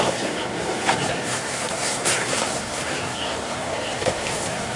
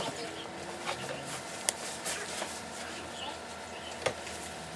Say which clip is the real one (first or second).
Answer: second